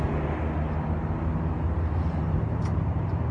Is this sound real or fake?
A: real